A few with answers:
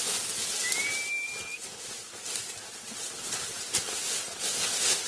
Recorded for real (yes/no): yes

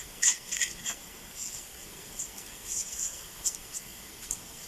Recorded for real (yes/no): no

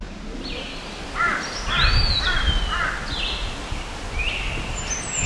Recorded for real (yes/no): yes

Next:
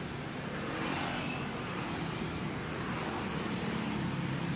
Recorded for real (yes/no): yes